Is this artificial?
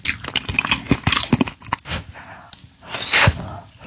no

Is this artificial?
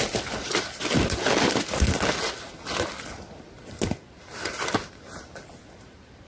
no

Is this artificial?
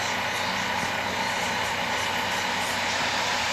no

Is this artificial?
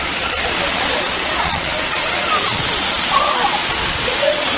yes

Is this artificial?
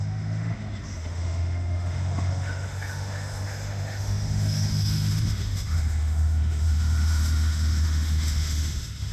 yes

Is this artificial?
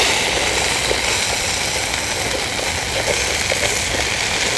no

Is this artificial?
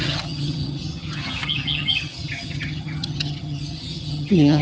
yes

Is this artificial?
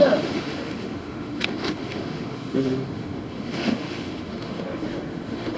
yes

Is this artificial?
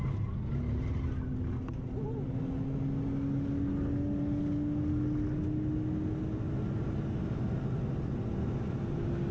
no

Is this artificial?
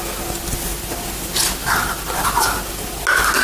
no